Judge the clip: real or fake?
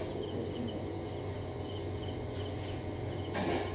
fake